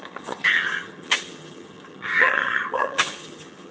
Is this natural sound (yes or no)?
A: no